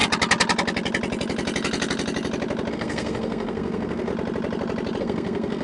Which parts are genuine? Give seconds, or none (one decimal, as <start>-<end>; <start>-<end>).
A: 0.0-2.7; 4.1-5.0